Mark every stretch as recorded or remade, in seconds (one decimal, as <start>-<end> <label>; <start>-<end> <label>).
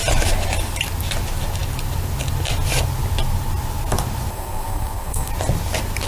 0.0-4.3 recorded; 4.3-5.3 remade; 5.3-6.1 recorded